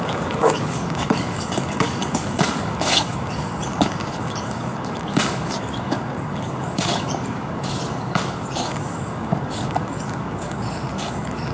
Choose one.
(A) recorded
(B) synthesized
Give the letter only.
B